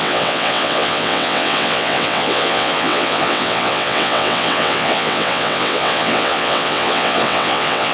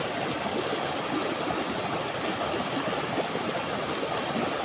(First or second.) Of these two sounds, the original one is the second